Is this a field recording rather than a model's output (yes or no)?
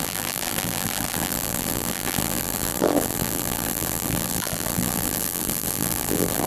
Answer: no